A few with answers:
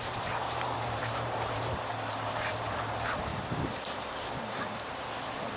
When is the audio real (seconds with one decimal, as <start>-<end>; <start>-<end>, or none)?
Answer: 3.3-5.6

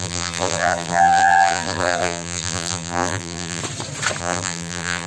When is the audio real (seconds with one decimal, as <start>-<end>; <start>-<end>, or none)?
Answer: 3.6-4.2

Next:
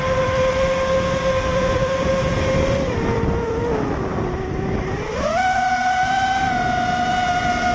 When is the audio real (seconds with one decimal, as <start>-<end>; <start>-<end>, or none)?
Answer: 0.0-1.5; 3.6-4.1; 4.9-7.7

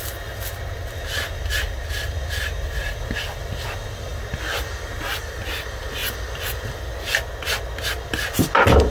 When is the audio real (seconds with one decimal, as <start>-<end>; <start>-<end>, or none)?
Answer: 0.0-8.9

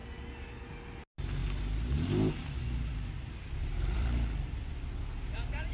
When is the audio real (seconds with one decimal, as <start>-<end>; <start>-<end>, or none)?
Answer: 0.0-3.6; 4.7-5.7

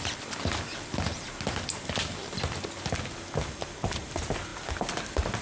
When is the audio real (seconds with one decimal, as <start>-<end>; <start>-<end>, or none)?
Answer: 0.0-5.4

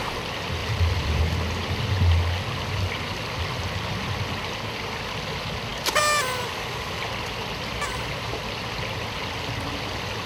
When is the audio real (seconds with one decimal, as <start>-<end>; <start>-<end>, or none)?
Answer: 0.0-0.6; 1.2-7.9; 8.4-10.3